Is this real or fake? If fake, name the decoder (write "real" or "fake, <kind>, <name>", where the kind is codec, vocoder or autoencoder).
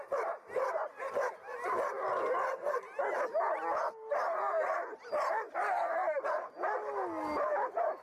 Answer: real